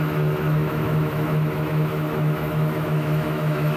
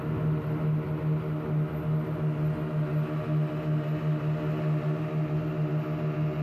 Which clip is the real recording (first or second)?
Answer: second